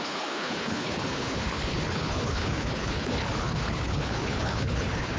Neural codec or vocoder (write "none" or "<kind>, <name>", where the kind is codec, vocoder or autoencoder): codec, HILCodec